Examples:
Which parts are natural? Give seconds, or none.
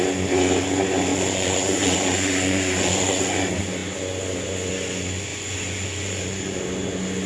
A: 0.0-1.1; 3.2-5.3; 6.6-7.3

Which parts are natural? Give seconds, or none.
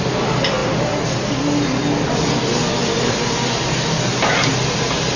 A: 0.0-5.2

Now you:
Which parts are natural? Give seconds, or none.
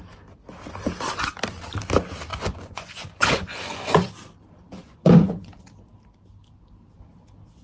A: 0.0-2.3; 4.1-4.8; 5.5-7.6